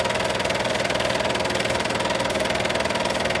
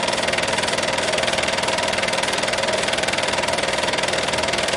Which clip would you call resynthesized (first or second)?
second